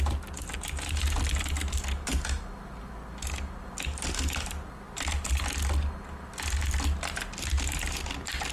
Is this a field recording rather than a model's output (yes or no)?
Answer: no